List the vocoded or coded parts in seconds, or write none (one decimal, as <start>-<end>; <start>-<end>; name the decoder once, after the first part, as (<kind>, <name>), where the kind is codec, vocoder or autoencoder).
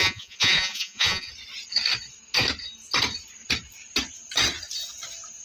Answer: 0.0-1.3 (vocoder, Vocos)